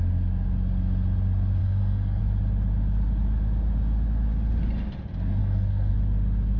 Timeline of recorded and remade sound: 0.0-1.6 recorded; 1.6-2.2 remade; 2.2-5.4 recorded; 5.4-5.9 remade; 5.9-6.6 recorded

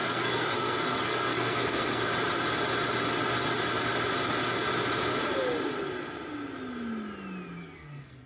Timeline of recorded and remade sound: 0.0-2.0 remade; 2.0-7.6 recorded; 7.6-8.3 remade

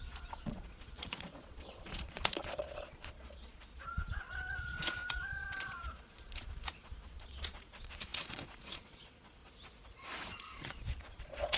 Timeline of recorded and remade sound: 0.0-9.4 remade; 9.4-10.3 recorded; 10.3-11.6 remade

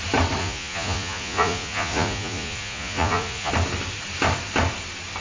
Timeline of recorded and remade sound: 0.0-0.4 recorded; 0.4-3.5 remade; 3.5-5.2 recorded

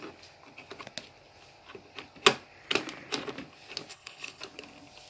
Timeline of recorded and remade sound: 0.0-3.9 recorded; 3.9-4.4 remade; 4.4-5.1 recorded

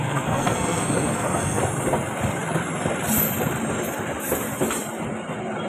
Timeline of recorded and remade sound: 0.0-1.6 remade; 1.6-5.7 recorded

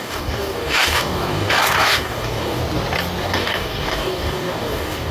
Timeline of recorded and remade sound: 0.0-2.6 remade; 2.6-3.2 recorded; 3.2-5.1 remade

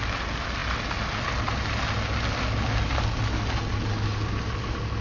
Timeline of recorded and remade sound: 0.0-5.0 recorded